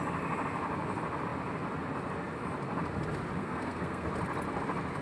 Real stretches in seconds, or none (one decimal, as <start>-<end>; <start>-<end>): 0.0-3.4; 4.1-5.0